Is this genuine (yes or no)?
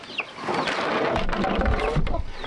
yes